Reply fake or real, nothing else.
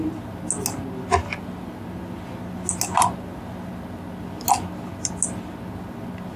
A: real